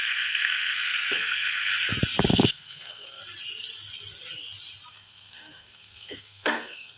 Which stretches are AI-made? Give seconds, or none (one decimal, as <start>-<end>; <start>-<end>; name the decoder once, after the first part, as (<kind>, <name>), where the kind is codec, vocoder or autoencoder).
0.0-1.7 (codec, SNAC); 2.3-3.2; 4.9-7.0